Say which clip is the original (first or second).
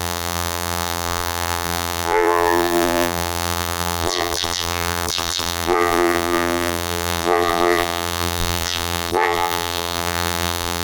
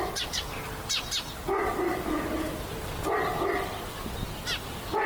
second